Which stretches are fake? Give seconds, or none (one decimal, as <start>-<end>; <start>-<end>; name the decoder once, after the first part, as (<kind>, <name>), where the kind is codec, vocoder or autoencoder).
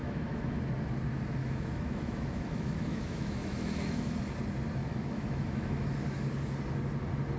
0.0-0.6 (autoencoder, DAC-VAE); 1.4-4.2; 4.8-5.9